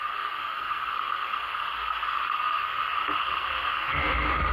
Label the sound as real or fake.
fake